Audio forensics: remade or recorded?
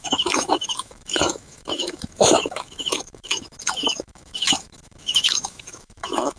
remade